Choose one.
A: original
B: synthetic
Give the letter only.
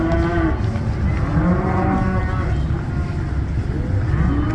A